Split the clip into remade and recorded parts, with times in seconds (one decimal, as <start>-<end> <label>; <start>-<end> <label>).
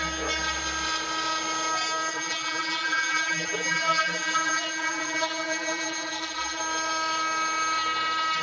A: 0.0-2.1 recorded; 2.1-6.6 remade; 6.6-8.4 recorded